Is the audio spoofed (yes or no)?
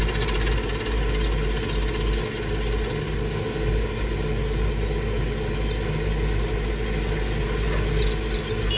no